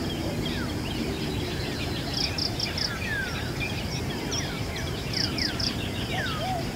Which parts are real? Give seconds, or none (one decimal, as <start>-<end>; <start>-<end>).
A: 0.0-3.2; 5.7-6.8